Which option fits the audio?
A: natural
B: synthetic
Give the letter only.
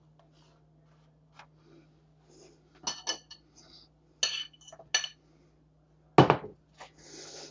A